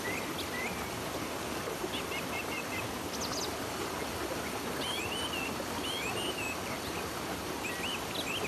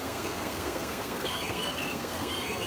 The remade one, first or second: second